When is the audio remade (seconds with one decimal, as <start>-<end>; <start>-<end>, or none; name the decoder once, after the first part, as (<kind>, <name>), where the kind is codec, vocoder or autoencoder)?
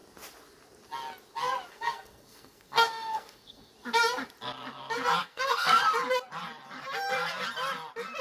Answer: 1.7-3.7 (codec, SNAC); 5.2-5.8